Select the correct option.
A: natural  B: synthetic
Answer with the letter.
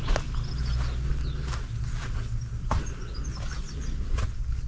A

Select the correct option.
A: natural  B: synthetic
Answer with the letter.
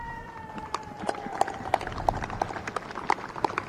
A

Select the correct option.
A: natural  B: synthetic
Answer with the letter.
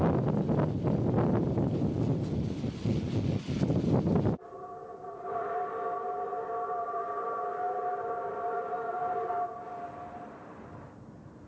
A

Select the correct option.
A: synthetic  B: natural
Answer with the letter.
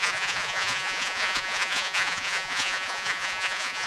A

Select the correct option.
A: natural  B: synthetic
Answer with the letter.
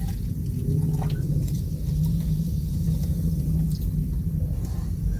A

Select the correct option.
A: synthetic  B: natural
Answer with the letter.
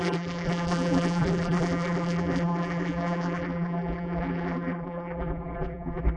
A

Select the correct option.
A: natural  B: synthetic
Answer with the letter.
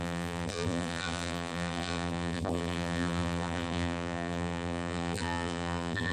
B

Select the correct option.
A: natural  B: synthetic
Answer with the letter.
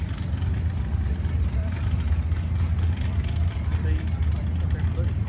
A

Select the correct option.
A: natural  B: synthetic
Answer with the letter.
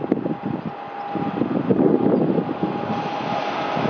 A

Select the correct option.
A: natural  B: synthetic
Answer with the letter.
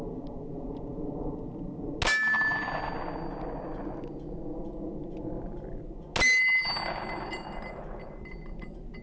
A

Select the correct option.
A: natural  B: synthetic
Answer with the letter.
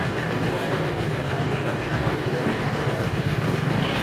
B